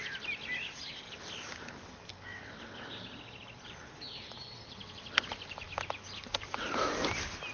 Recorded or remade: recorded